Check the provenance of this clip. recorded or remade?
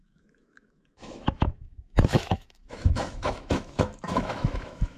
remade